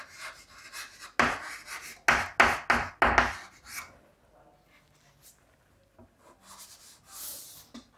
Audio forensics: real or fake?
real